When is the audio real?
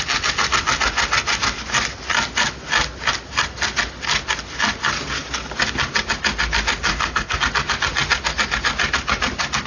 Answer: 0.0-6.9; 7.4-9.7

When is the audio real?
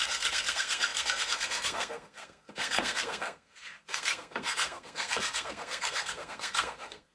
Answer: none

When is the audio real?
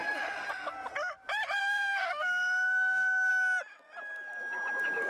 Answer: 0.0-1.6; 3.3-5.1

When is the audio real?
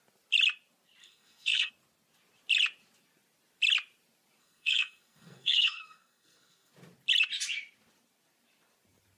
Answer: 0.0-1.0; 1.7-4.4; 6.7-9.2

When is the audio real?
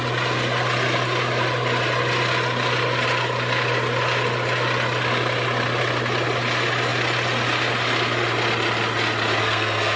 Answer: 0.0-9.4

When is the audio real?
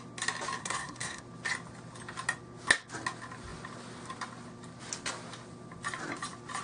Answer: 0.0-0.6; 1.2-6.6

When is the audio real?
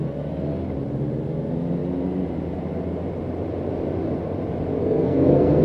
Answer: 0.0-4.8